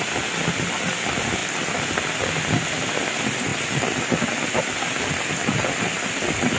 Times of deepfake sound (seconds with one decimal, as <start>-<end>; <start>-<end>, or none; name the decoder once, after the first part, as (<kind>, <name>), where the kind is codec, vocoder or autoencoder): none